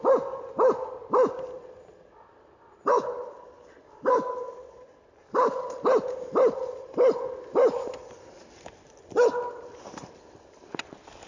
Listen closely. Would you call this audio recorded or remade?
recorded